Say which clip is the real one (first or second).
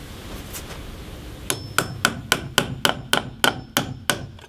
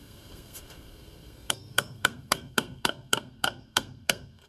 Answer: first